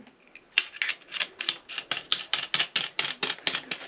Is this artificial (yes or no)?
no